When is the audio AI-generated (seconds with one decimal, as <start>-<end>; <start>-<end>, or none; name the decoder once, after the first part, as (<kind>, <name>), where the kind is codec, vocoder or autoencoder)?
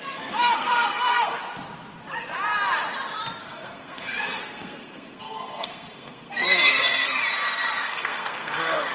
0.0-1.4 (codec, SNAC); 3.4-7.2; 7.8-8.9